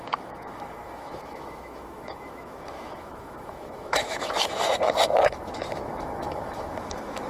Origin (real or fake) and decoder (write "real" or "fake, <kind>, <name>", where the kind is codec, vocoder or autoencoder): fake, autoencoder, DAC-VAE